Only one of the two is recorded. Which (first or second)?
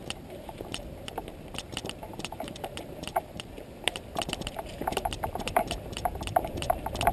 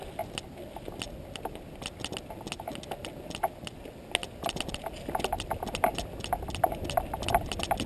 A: second